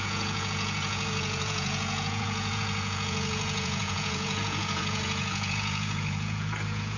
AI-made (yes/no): yes